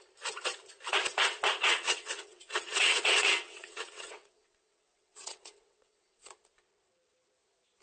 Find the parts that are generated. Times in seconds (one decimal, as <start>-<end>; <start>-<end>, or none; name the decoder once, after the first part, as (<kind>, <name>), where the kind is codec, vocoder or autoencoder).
1.6-6.3 (vocoder, WaveNeXt)